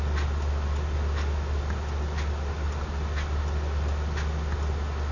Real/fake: real